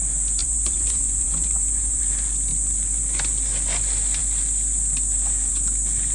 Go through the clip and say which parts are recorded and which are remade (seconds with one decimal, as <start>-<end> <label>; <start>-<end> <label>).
0.0-0.4 recorded; 0.4-2.0 remade; 2.0-6.1 recorded